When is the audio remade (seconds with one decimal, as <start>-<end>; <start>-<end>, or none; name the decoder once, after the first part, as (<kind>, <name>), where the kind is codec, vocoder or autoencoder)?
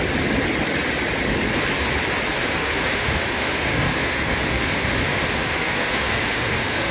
2.6-6.9 (autoencoder, DAC-VAE)